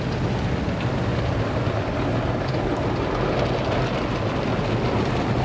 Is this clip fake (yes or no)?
no